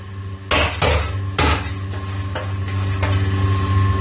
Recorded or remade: recorded